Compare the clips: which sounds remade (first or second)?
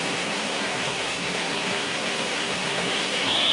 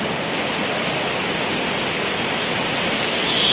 first